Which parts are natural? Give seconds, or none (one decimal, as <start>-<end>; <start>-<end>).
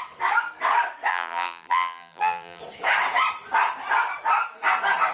0.0-1.1; 2.6-5.1